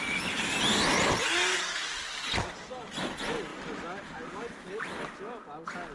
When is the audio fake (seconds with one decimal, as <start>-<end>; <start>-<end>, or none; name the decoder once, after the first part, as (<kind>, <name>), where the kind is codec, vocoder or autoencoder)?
none

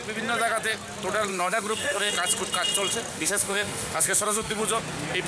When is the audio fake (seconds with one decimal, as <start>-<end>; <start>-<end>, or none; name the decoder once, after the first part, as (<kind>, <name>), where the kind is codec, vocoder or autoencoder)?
1.3-2.1 (autoencoder, DAC-VAE); 3.1-4.6

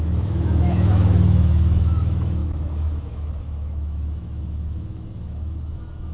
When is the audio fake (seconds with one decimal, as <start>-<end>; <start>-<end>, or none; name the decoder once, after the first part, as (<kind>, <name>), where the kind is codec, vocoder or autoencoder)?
0.0-6.1 (autoencoder, DAC-VAE)

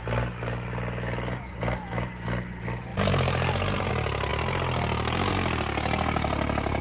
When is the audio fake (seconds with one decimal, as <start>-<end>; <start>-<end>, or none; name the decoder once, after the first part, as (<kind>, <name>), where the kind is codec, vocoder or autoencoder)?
2.9-3.9 (vocoder, BigVGAN v2)

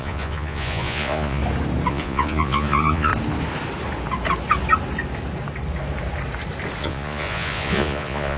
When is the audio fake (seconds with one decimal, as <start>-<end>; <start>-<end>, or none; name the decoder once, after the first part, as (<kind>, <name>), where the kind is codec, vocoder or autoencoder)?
0.0-1.4 (vocoder, Vocos); 1.9-3.1; 6.8-8.4

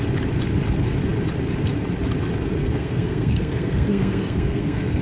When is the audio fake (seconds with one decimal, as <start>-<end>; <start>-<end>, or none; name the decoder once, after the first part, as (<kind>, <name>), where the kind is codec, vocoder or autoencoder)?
2.6-5.0 (codec, SNAC)